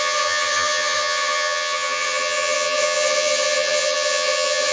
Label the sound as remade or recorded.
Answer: remade